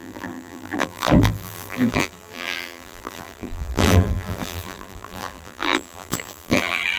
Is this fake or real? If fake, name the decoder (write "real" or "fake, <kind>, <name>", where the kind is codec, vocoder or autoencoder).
fake, vocoder, BigVGAN v2